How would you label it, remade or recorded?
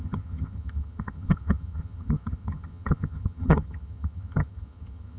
remade